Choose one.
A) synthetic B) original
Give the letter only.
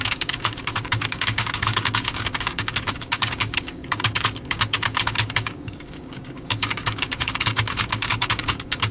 A